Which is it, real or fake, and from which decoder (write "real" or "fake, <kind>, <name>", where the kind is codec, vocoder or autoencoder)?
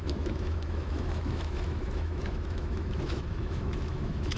fake, autoencoder, DAC-VAE